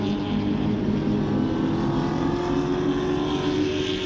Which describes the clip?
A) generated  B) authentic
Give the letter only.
B